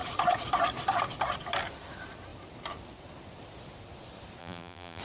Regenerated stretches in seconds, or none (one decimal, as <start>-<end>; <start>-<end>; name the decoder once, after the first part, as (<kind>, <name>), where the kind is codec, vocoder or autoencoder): 4.4-5.0 (vocoder, BigVGAN v2)

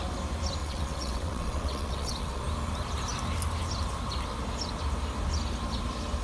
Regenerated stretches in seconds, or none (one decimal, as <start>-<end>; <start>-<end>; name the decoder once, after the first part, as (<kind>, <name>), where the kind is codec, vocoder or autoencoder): 0.6-2.4 (vocoder, WaveNeXt)